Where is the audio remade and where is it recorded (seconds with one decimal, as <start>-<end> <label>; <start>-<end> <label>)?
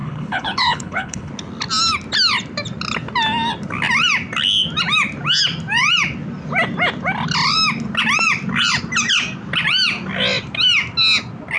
0.0-1.3 remade; 1.3-11.6 recorded